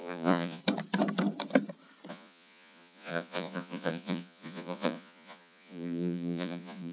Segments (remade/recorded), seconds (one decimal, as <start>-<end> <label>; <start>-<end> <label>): 0.0-0.6 remade; 0.6-2.1 recorded; 2.1-6.9 remade